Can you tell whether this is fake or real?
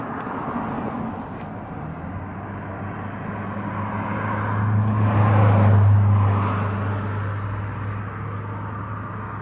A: real